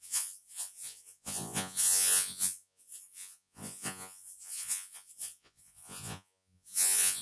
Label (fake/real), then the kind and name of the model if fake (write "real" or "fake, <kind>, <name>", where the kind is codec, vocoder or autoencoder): fake, vocoder, Vocos